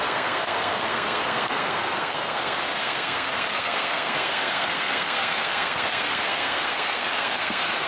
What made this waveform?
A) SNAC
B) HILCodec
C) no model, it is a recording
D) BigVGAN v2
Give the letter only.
A